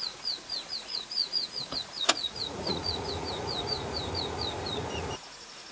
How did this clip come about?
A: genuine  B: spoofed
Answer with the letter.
B